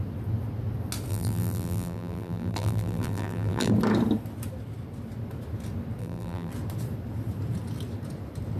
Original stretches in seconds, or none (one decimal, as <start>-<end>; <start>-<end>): 0.0-1.1; 3.7-6.0; 6.5-8.6